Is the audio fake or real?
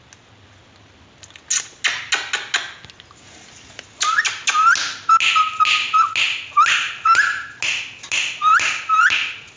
real